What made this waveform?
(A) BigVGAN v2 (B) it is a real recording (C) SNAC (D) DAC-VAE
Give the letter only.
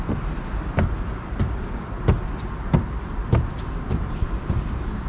B